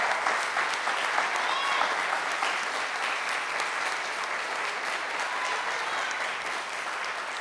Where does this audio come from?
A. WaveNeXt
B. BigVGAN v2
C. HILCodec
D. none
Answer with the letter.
D